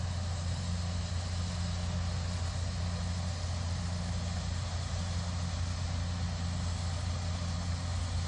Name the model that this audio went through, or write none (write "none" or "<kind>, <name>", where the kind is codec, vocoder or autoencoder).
none